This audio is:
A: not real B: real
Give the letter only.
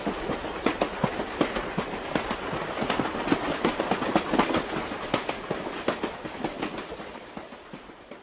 B